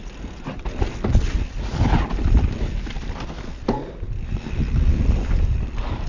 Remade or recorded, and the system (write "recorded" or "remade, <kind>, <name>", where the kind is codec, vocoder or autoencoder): recorded